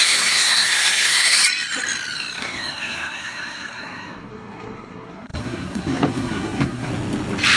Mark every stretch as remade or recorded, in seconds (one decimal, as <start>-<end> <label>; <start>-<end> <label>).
0.0-1.4 remade; 1.4-2.4 recorded; 2.4-6.9 remade; 6.9-7.6 recorded